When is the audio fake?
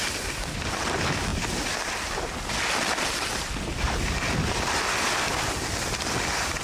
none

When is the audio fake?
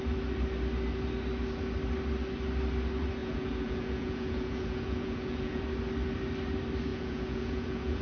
3.2-5.6 (vocoder, Vocos); 6.9-8.0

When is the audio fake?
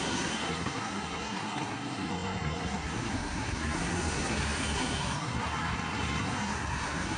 0.0-7.2 (codec, SNAC)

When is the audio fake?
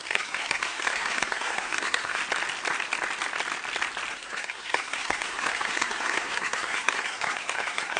0.0-2.2 (codec, SNAC); 4.1-8.0